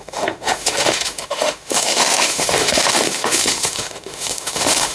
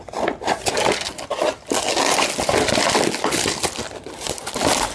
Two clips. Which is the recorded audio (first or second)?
second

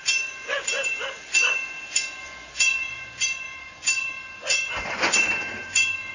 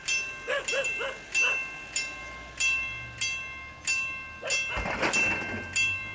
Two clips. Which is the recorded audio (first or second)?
second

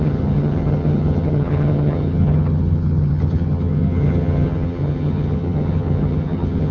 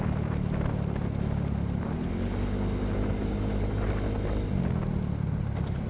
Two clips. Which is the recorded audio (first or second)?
second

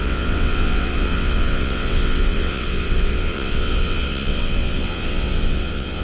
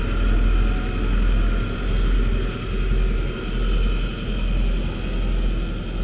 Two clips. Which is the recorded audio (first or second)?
second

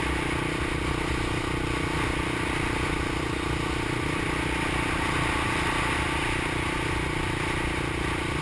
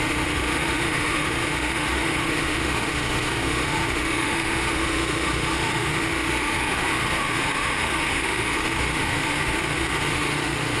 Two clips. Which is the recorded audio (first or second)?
first